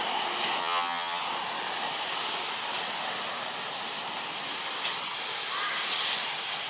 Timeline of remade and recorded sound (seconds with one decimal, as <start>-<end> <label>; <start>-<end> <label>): 0.0-0.6 recorded; 0.6-1.2 remade; 1.2-6.7 recorded